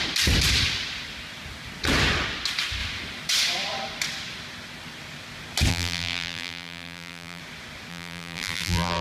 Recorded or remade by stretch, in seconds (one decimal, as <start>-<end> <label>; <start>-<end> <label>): 0.0-5.7 recorded; 5.7-7.4 remade; 7.4-7.9 recorded; 7.9-9.0 remade